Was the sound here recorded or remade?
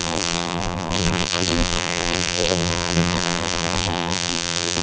remade